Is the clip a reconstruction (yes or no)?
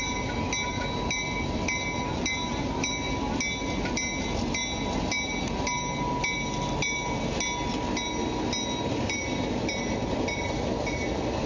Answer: no